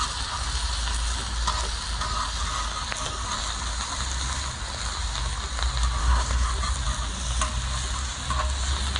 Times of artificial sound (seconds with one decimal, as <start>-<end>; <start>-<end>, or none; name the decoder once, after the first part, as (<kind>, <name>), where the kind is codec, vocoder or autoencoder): 6.0-6.5 (codec, SNAC)